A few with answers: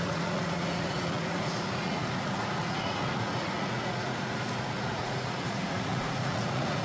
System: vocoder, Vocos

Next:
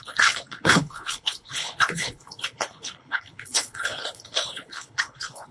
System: codec, HILCodec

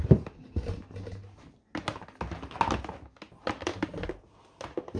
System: none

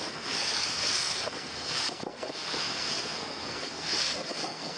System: codec, SNAC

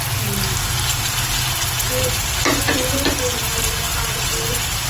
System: none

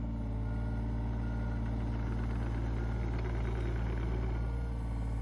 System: none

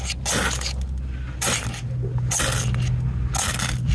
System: none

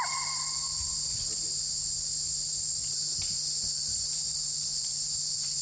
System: none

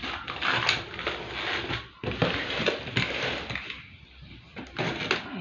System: none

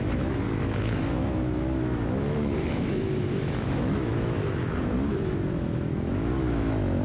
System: autoencoder, DAC-VAE